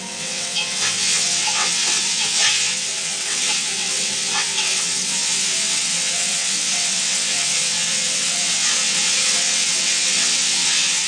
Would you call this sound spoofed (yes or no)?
yes